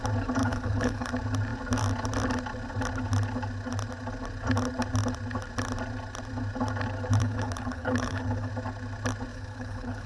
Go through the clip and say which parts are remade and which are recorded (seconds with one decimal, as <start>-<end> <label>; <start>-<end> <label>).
0.0-0.4 recorded; 0.4-1.1 remade; 1.1-7.2 recorded; 7.2-8.5 remade; 8.5-9.3 recorded; 9.3-10.1 remade